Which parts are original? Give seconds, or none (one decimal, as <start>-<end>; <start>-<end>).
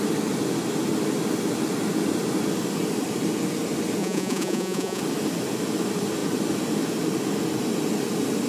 0.0-4.0; 5.0-8.5